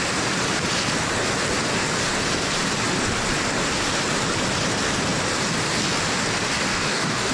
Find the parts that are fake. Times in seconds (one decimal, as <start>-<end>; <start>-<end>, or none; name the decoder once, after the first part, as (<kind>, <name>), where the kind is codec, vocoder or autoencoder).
6.7-7.3 (codec, DAC)

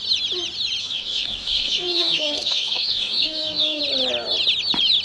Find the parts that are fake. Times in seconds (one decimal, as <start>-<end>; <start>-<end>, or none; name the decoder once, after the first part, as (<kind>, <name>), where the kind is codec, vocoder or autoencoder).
0.8-3.8 (codec, DAC)

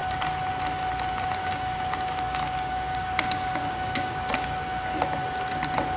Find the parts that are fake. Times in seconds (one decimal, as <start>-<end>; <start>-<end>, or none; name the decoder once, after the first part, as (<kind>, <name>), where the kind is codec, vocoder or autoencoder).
1.4-5.0 (codec, DAC)

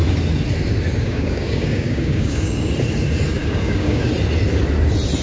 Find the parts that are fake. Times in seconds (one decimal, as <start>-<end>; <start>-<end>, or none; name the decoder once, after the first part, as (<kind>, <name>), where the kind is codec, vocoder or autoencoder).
1.0-2.7 (codec, DAC); 3.4-4.1

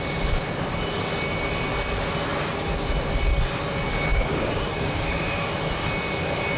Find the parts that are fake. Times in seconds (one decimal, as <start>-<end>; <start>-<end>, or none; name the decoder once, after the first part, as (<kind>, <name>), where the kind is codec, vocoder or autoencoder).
4.1-5.5 (codec, DAC)

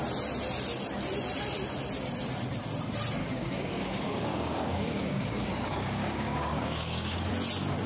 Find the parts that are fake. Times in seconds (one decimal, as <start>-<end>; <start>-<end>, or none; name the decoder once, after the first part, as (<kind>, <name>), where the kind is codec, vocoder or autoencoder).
3.2-7.3 (codec, DAC)